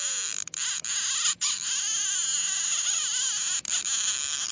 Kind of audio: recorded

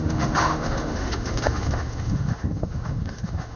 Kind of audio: remade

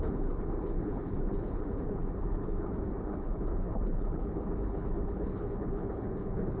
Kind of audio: remade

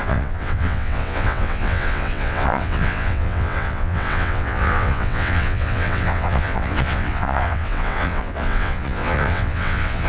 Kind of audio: remade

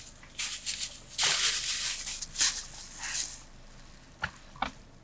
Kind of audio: recorded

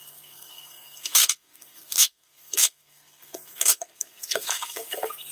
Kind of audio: remade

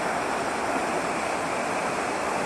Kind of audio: recorded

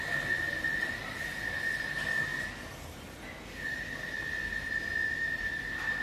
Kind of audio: recorded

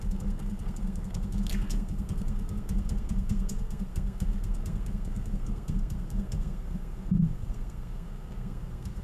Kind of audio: remade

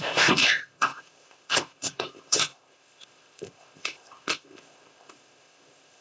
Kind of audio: remade